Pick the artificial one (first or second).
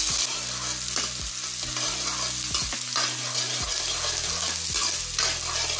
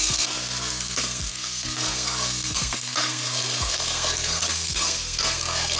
second